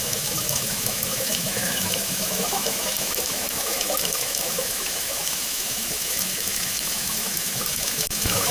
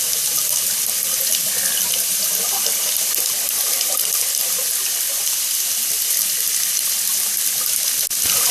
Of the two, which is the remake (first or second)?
first